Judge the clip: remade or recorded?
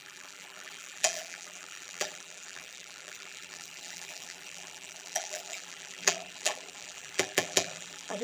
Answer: remade